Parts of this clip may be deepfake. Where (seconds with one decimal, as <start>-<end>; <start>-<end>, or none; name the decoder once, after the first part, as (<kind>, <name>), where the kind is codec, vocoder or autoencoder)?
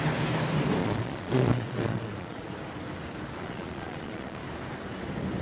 0.8-2.5 (vocoder, Vocos); 3.4-4.4